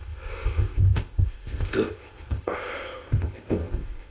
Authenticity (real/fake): fake